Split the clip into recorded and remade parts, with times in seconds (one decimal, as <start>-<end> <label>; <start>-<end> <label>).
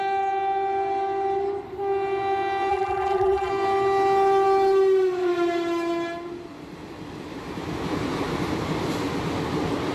0.0-2.7 recorded; 2.7-3.5 remade; 3.5-9.9 recorded